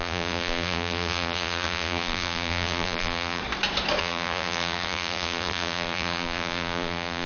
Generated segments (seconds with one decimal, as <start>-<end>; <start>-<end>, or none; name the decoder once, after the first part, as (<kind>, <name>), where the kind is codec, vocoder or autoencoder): 0.0-3.4 (vocoder, BigVGAN v2); 4.0-7.3